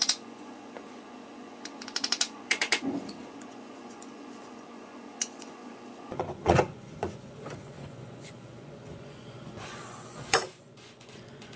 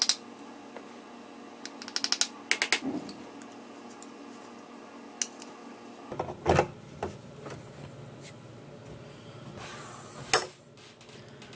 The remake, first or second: first